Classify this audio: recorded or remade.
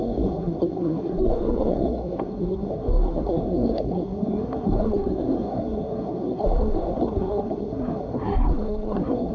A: remade